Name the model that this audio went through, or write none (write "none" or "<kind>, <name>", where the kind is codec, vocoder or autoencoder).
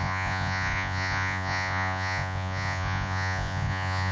vocoder, Vocos